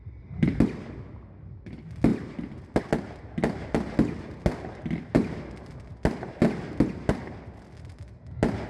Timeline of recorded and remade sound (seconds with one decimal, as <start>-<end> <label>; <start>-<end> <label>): 0.0-2.1 recorded; 2.1-2.8 remade; 2.8-8.7 recorded